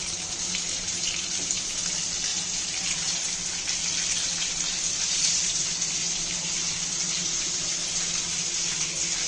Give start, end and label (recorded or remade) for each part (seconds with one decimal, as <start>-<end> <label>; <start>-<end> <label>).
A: 0.0-1.8 remade; 1.8-2.3 recorded; 2.3-3.3 remade; 3.3-4.4 recorded; 4.4-7.7 remade; 7.7-9.3 recorded